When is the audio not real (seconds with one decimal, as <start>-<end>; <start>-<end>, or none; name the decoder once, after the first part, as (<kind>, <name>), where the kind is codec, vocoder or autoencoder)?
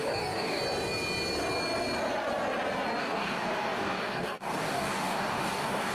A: 0.0-0.6 (codec, DAC); 3.0-5.9